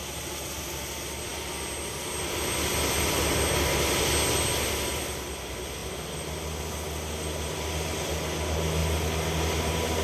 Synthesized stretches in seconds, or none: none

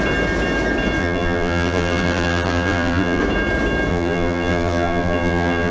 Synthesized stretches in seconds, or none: 1.0-3.2 (vocoder, BigVGAN v2); 3.9-5.7

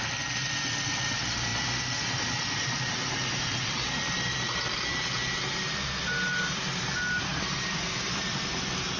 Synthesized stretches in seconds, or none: 0.0-1.5 (vocoder, BigVGAN v2); 2.2-4.9; 6.4-7.3; 8.0-9.0

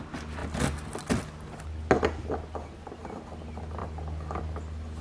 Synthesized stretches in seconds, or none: 0.4-1.8 (vocoder, BigVGAN v2)

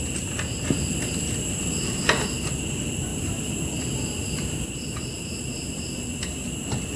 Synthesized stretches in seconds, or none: 3.1-6.5 (vocoder, BigVGAN v2)

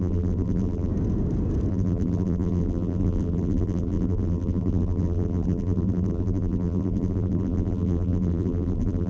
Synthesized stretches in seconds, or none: 0.0-0.9 (vocoder, BigVGAN v2); 1.7-9.1

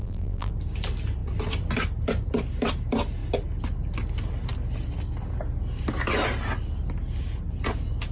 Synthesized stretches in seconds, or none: 0.0-0.5 (vocoder, BigVGAN v2)

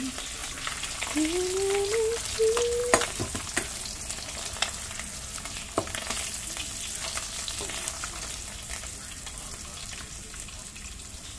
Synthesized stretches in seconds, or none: 0.4-1.0 (vocoder, BigVGAN v2); 2.8-3.7